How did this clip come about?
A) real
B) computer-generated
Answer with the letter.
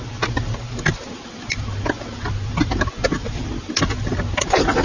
A